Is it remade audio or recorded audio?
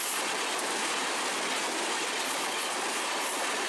recorded